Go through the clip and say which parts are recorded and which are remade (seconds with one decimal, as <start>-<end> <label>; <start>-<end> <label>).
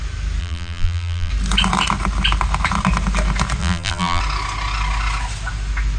0.0-0.4 recorded; 0.4-1.3 remade; 1.3-3.6 recorded; 3.6-4.2 remade; 4.2-6.0 recorded